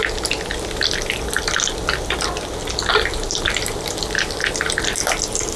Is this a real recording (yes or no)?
yes